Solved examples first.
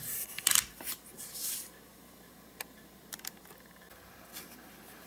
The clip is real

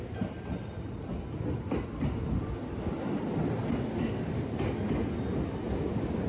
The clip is real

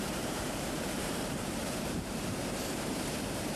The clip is fake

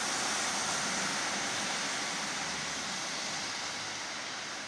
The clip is real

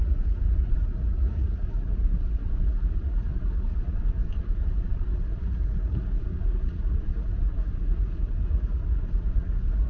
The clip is fake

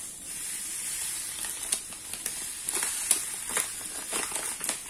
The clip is real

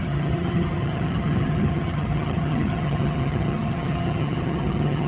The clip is fake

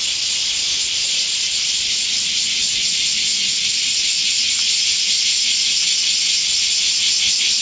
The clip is real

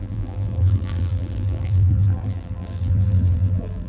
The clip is fake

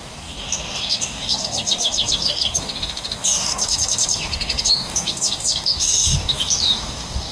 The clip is fake